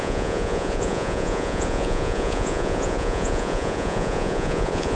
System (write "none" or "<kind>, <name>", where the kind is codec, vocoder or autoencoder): vocoder, Vocos